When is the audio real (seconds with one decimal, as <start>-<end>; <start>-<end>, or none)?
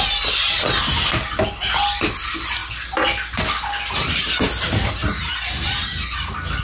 0.0-6.6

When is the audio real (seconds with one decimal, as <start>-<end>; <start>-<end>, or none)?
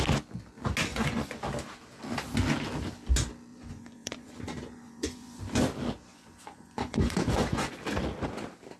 0.0-0.9; 1.4-3.5; 5.4-6.1; 7.7-8.8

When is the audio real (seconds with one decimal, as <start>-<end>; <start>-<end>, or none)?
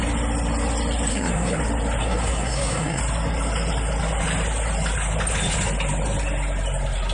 0.0-1.1; 1.6-2.0; 3.0-7.1